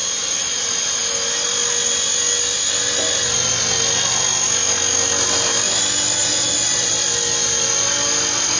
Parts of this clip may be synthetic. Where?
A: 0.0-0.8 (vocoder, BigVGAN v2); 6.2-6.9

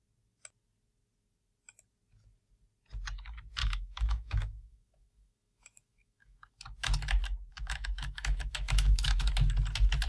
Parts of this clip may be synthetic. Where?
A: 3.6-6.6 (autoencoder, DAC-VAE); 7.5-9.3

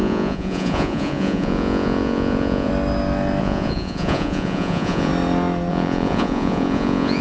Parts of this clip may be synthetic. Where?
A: 0.0-2.7 (vocoder, Vocos); 3.4-5.1; 5.7-7.2

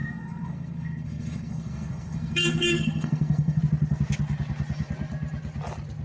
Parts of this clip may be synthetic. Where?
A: 0.0-3.6 (codec, SNAC)